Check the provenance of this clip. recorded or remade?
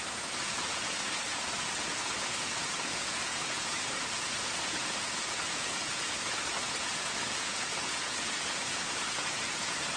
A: remade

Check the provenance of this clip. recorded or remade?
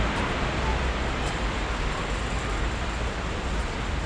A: recorded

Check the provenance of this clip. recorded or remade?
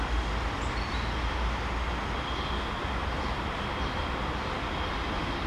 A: recorded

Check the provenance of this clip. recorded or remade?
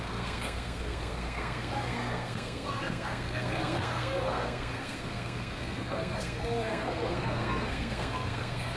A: remade